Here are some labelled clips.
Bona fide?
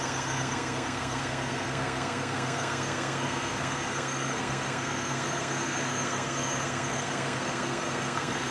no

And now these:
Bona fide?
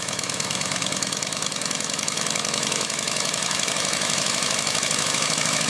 no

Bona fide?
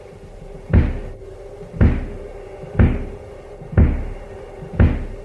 yes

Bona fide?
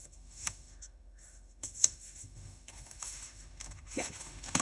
no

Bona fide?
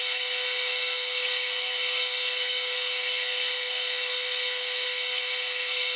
no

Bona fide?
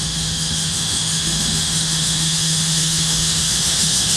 no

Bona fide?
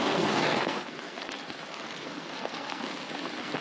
no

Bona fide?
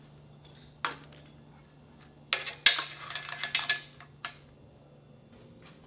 yes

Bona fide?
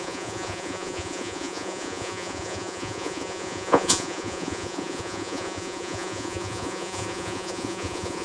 no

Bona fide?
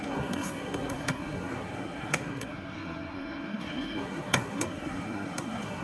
no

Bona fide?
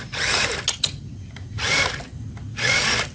yes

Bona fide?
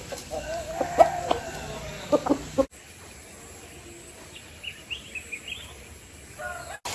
yes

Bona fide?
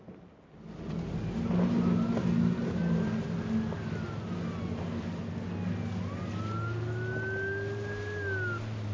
yes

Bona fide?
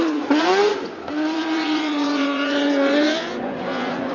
no